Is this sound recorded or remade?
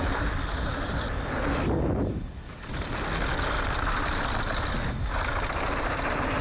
recorded